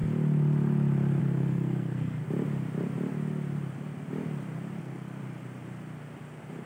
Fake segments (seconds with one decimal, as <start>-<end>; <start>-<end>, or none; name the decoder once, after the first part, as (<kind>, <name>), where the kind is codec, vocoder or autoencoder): 1.2-2.2 (codec, SNAC); 4.8-5.2